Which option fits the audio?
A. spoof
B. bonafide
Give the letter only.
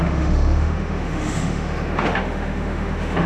A